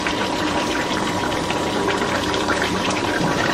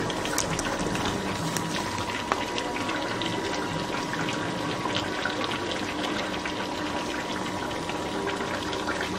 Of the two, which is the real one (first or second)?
second